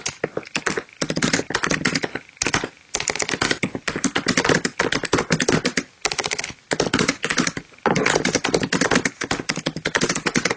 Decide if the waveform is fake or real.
real